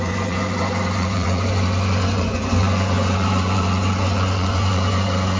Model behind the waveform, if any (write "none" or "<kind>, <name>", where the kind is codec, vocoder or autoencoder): vocoder, Vocos